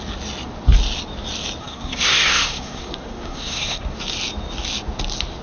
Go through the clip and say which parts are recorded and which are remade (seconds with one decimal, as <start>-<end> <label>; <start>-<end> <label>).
0.0-1.6 recorded; 1.6-4.0 remade; 4.0-5.4 recorded